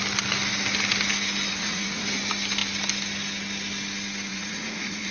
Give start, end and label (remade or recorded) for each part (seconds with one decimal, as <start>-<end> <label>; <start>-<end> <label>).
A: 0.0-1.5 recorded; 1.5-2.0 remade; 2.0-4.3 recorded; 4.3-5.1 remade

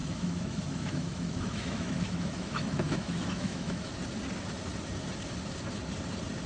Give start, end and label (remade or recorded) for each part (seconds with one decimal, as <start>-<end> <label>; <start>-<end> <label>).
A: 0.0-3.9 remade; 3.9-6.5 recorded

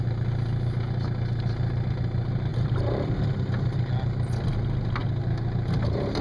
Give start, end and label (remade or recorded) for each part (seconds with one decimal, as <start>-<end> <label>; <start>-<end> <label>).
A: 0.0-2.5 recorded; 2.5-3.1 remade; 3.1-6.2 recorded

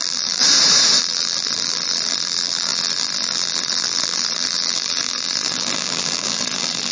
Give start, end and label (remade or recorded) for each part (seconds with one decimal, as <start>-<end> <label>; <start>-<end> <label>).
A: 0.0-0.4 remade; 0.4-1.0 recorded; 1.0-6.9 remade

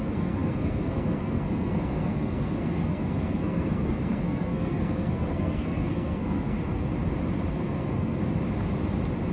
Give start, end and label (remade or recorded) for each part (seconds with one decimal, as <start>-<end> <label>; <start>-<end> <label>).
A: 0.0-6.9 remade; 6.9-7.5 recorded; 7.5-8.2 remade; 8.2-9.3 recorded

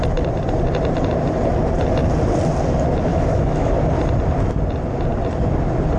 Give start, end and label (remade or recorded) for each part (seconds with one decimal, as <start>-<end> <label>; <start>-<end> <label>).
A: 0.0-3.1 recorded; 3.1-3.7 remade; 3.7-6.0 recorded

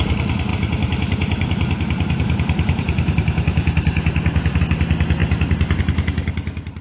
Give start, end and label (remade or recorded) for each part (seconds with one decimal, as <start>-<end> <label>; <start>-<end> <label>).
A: 0.0-0.5 recorded; 0.5-4.6 remade; 4.6-5.2 recorded; 5.2-5.8 remade; 5.8-6.8 recorded

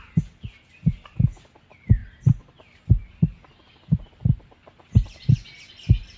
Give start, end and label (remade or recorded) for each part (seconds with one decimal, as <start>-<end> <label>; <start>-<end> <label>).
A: 0.0-6.2 recorded